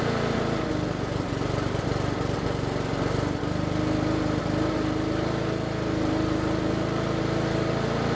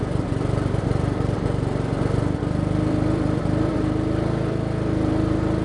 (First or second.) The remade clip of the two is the second